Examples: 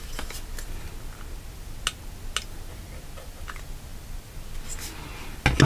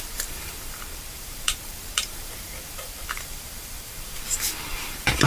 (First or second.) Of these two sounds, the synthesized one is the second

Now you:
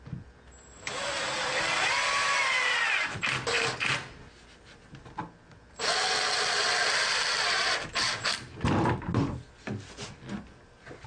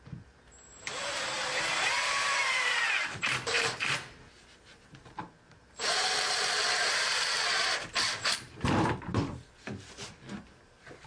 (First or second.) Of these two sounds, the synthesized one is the second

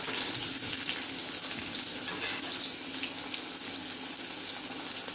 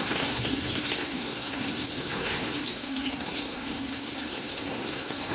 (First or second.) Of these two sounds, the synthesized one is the second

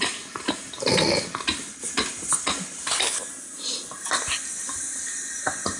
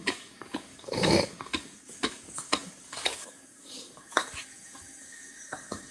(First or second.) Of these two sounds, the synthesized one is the second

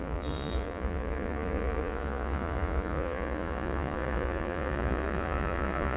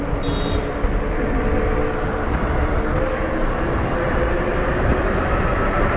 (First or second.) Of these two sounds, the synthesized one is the first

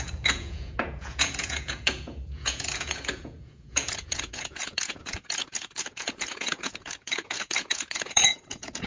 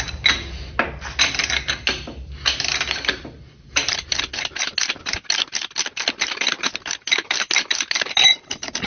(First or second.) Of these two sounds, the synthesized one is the first